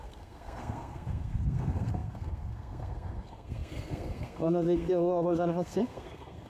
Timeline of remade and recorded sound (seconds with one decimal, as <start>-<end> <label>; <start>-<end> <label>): 0.0-6.5 remade